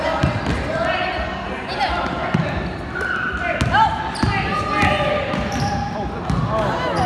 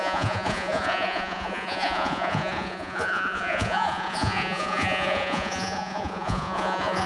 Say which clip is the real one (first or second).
first